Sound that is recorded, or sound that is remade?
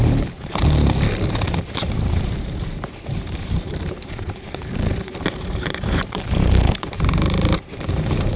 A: remade